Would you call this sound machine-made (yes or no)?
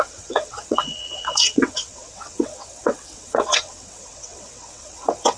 yes